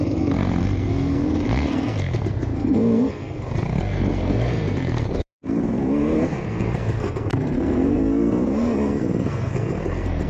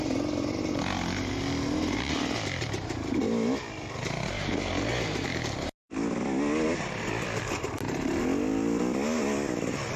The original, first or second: second